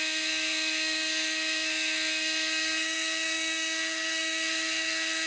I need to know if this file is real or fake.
fake